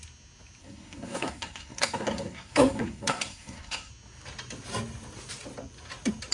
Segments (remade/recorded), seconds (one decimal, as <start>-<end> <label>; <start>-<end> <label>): 0.0-0.6 recorded; 0.6-3.9 remade; 3.9-6.3 recorded